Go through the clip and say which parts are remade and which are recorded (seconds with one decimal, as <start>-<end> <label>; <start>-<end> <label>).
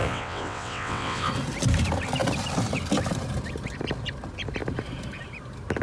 0.0-1.3 remade; 1.3-5.8 recorded